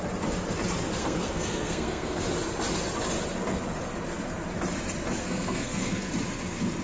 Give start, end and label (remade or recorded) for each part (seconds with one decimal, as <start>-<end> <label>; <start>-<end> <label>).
0.0-1.0 recorded; 1.0-2.2 remade; 2.2-5.2 recorded; 5.2-6.1 remade; 6.1-6.8 recorded